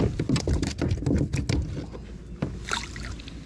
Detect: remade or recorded recorded